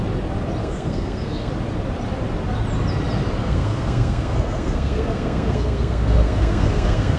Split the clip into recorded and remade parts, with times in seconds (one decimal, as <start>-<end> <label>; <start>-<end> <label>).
0.0-0.6 recorded; 0.6-1.5 remade; 1.5-3.4 recorded; 3.4-7.2 remade